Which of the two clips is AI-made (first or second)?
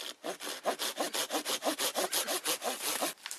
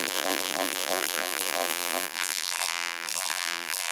second